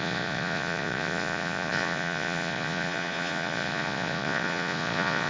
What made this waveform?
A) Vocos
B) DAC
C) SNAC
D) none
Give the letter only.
A